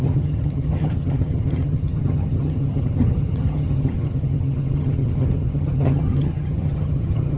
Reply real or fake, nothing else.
fake